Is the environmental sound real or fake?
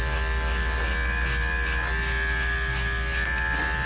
real